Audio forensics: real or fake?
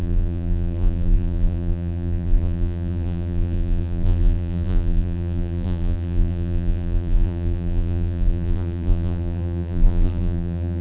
fake